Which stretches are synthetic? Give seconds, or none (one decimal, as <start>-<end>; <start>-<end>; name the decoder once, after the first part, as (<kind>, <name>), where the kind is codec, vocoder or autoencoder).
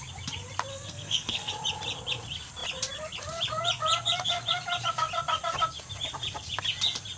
0.7-1.5 (codec, SNAC)